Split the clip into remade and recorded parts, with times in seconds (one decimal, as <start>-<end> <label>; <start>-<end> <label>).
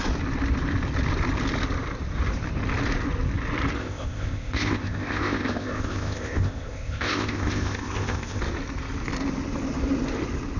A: 0.0-3.8 recorded; 3.8-8.4 remade; 8.4-10.6 recorded